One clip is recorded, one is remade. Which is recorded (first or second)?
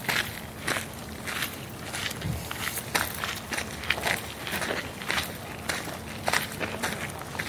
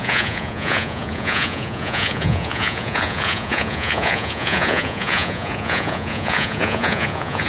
first